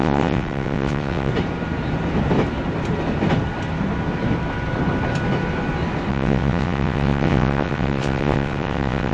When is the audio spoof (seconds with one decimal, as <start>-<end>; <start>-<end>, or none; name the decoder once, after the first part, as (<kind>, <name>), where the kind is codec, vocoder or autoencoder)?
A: 0.0-1.3 (vocoder, WaveNeXt); 6.1-9.1

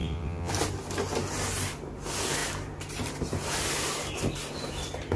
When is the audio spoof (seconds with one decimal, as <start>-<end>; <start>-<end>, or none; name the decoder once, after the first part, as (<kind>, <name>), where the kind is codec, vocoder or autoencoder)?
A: 0.0-0.5 (vocoder, WaveNeXt)

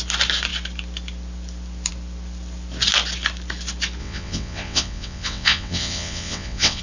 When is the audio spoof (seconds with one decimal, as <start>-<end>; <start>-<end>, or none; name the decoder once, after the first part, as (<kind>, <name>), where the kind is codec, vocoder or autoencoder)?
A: 4.0-6.8 (vocoder, WaveNeXt)